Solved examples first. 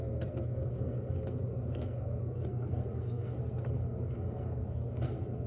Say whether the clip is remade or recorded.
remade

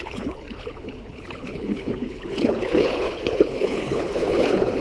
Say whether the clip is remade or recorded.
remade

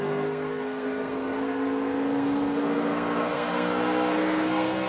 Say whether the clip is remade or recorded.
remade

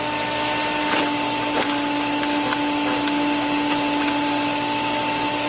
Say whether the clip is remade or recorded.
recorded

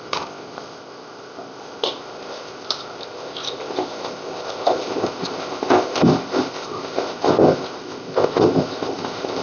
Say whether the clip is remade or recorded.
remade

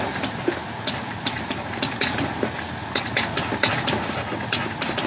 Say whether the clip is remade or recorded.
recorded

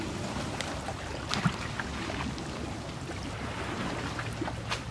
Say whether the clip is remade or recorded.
recorded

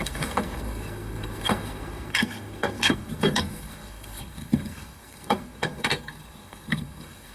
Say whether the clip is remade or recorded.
remade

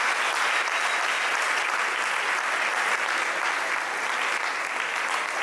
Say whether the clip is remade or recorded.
recorded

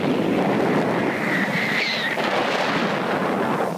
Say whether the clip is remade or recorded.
recorded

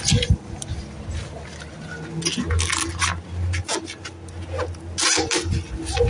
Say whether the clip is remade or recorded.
recorded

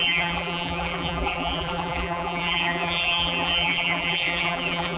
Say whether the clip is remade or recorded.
remade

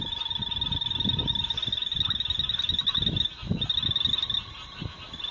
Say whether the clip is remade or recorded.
recorded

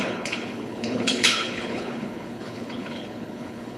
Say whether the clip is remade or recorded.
remade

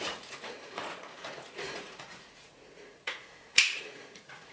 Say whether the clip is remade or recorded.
remade